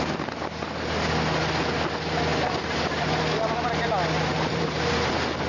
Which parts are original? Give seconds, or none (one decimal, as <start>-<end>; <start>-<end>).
0.0-2.3; 3.1-4.3; 4.9-5.5